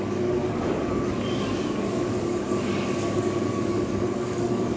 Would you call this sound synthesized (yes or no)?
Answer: yes